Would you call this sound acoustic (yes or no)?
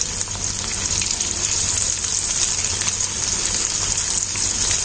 yes